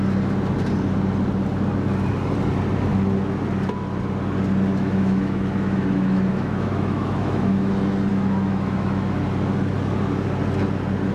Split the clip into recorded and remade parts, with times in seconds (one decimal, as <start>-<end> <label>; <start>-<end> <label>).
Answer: 0.0-4.7 recorded; 4.7-7.7 remade; 7.7-8.1 recorded; 8.1-9.2 remade; 9.2-11.1 recorded